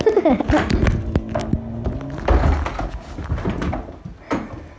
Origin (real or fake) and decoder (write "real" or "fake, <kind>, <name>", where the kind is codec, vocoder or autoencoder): real